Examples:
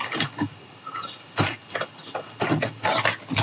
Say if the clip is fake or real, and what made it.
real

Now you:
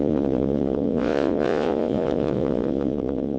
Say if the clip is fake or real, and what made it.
fake, vocoder, Vocos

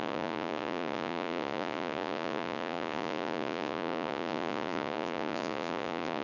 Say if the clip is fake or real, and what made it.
fake, vocoder, Vocos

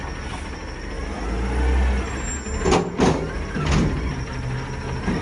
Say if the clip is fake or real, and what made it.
real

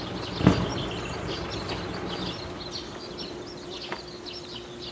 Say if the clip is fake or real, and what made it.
real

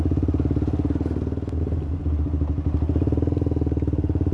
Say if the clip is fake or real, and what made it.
real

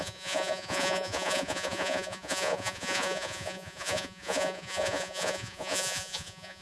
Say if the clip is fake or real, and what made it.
fake, vocoder, Vocos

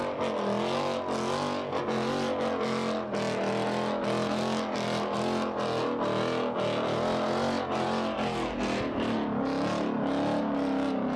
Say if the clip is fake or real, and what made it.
real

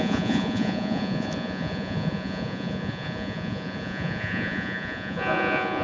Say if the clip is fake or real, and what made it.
fake, vocoder, Vocos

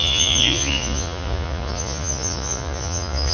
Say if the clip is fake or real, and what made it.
fake, vocoder, Vocos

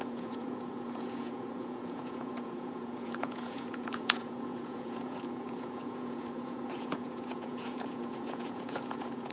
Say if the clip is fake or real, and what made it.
fake, vocoder, Vocos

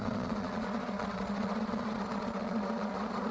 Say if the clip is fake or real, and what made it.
fake, vocoder, Vocos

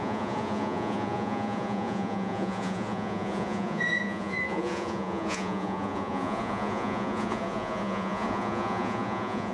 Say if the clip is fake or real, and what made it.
fake, vocoder, Vocos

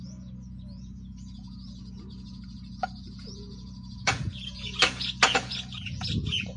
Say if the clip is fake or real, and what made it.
fake, vocoder, Vocos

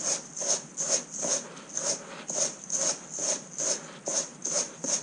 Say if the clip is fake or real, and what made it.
real